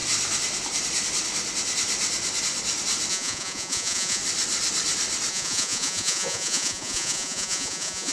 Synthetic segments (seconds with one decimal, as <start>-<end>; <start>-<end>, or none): 3.1-4.2; 5.3-8.1